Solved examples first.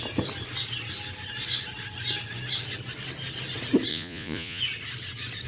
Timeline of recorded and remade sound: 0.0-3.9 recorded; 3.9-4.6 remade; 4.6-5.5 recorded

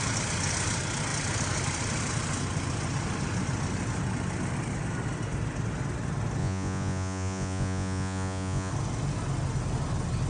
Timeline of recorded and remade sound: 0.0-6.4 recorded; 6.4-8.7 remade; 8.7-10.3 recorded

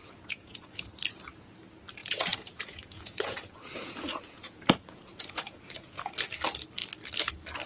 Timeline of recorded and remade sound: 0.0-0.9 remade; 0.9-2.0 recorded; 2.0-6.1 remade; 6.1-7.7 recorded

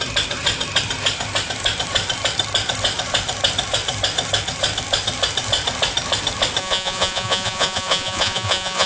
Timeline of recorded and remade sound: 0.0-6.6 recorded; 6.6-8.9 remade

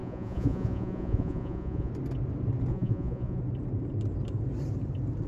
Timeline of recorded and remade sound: 0.0-1.9 remade; 1.9-2.7 recorded; 2.7-3.4 remade; 3.4-5.3 recorded

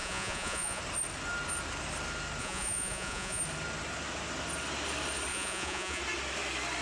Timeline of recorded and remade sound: 0.0-0.8 remade; 0.8-2.4 recorded; 2.4-3.4 remade; 3.4-5.3 recorded; 5.3-6.0 remade; 6.0-6.8 recorded

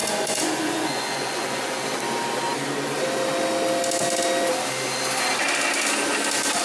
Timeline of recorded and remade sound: 0.0-1.8 remade; 1.8-6.6 recorded

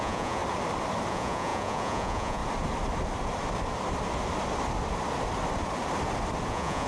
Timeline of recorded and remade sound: 0.0-0.4 remade; 0.4-1.1 recorded; 1.1-2.4 remade; 2.4-6.5 recorded; 6.5-6.9 remade